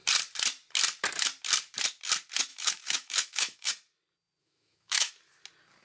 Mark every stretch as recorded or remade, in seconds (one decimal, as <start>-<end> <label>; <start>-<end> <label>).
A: 0.0-2.5 recorded; 2.5-3.7 remade; 3.7-4.4 recorded; 4.4-5.1 remade; 5.1-5.8 recorded